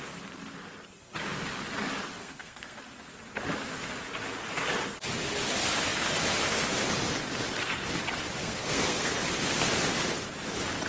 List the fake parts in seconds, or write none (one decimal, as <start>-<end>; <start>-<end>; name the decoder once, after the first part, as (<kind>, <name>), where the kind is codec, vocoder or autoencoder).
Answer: 2.2-2.8 (codec, SNAC); 8.4-9.1